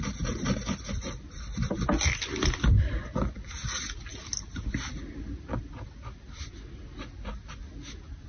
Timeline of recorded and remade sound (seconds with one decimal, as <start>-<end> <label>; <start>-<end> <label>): 0.0-8.3 recorded